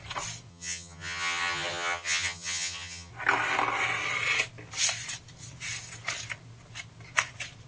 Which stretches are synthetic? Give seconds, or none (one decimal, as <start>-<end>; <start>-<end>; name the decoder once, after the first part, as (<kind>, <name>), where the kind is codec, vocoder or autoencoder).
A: 0.5-3.1 (vocoder, HiFi-GAN)